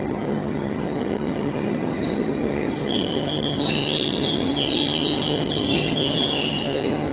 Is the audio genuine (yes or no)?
no